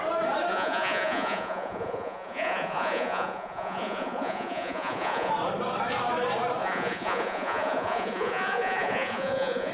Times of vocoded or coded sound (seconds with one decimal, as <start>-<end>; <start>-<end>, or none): 0.5-5.3; 6.6-9.7